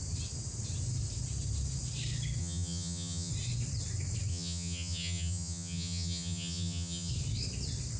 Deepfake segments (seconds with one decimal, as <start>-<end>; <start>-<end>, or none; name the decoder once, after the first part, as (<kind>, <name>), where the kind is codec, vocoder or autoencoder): 2.4-3.3 (vocoder, HiFi-GAN); 4.3-7.1